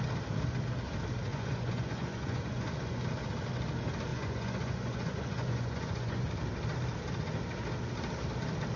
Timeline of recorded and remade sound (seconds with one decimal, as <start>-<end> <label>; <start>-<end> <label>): 0.0-1.3 recorded; 1.3-3.0 remade; 3.0-4.1 recorded; 4.1-6.3 remade; 6.3-8.8 recorded